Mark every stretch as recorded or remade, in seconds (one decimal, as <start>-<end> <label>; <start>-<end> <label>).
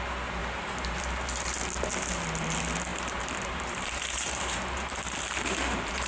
0.0-0.4 recorded; 0.4-1.0 remade; 1.0-2.9 recorded; 2.9-6.1 remade